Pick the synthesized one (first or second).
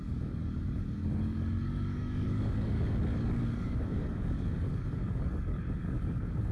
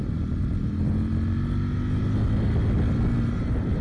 first